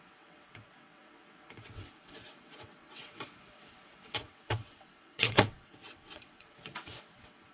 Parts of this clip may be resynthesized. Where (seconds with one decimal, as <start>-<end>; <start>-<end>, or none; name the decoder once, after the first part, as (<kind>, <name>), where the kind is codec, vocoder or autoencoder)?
0.0-7.5 (vocoder, WaveNeXt)